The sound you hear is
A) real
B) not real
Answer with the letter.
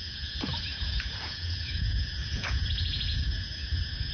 B